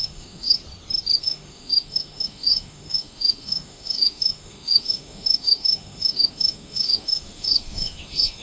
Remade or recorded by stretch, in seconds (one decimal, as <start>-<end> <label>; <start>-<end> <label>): 0.0-0.6 remade; 0.6-1.2 recorded; 1.2-8.4 remade